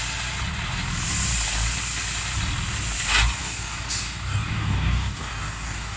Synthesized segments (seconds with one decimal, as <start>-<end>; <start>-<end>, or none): 3.4-6.0